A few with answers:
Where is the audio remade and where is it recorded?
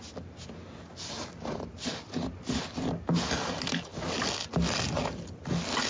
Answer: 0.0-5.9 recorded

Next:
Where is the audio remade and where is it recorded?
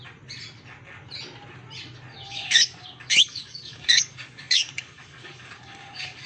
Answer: 0.0-2.1 recorded; 2.1-6.3 remade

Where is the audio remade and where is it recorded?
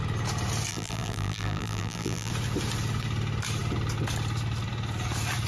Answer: 0.0-0.7 recorded; 0.7-2.3 remade; 2.3-5.5 recorded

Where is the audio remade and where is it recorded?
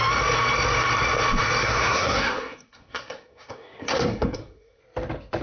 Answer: 0.0-1.6 recorded; 1.6-4.8 remade; 4.8-5.4 recorded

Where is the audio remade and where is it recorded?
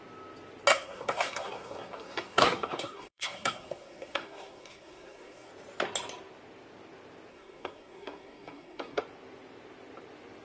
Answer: 0.0-0.7 recorded; 0.7-5.5 remade; 5.5-7.3 recorded; 7.3-9.0 remade; 9.0-10.4 recorded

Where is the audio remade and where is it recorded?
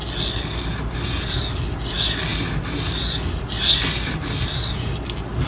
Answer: 0.0-5.5 recorded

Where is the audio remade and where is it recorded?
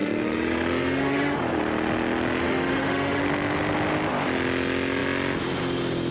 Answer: 0.0-1.4 remade; 1.4-2.4 recorded; 2.4-3.2 remade; 3.2-6.1 recorded